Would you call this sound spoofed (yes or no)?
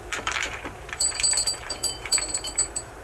yes